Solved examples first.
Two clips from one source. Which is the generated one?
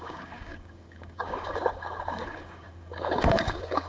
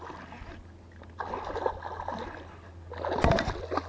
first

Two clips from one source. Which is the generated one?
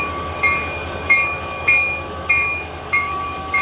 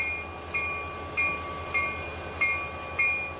first